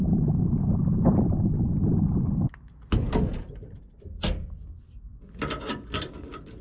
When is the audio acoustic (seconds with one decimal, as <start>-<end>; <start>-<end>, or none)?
0.0-6.6